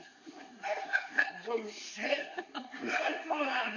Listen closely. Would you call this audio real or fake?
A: fake